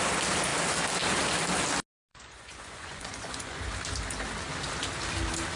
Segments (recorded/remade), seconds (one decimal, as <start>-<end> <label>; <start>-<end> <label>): 0.0-2.1 recorded; 2.1-3.6 remade; 3.6-5.6 recorded